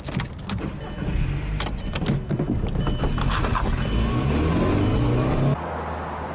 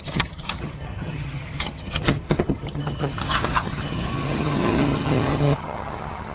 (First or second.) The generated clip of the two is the second